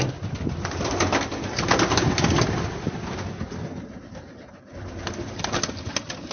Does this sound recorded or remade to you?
recorded